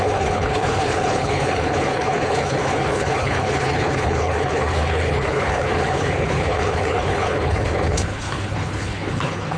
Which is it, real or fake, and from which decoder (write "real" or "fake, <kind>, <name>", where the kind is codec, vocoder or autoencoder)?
fake, codec, HILCodec